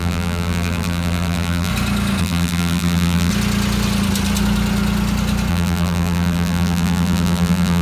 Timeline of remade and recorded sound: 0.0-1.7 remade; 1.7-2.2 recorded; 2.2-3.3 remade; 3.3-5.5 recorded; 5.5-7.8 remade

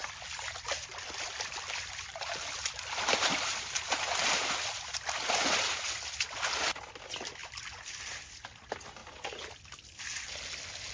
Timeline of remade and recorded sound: 0.0-2.2 remade; 2.2-7.4 recorded; 7.4-8.0 remade; 8.0-10.9 recorded

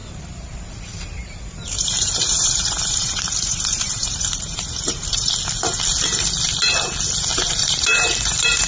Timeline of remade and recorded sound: 0.0-1.2 recorded; 1.2-5.3 remade; 5.3-7.3 recorded; 7.3-8.7 remade

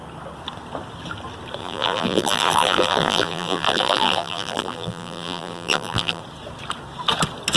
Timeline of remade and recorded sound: 0.0-1.6 recorded; 1.6-6.2 remade; 6.2-7.6 recorded

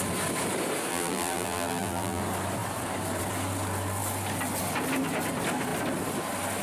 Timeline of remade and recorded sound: 0.0-0.9 recorded; 0.9-2.2 remade; 2.2-6.6 recorded